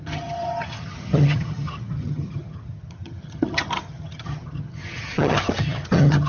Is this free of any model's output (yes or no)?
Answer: no